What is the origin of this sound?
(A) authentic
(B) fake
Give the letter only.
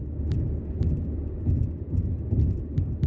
A